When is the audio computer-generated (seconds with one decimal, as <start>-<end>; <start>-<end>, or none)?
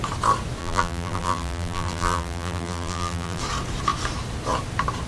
0.6-3.4